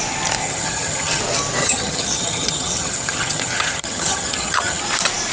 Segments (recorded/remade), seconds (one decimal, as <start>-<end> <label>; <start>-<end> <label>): 0.0-0.4 recorded; 0.4-1.2 remade; 1.2-1.6 recorded; 1.6-4.8 remade; 4.8-5.3 recorded